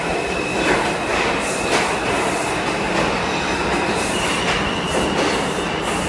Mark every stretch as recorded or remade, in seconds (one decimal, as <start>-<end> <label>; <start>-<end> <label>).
0.0-6.1 recorded